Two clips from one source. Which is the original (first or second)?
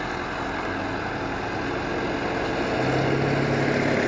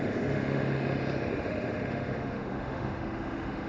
first